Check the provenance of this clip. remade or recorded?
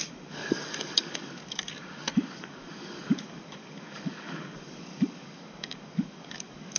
remade